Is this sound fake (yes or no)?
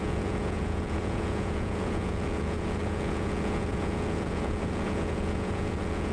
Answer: yes